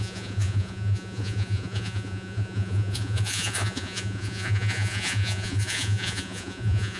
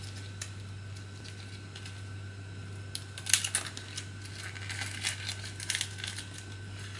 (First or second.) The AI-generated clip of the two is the first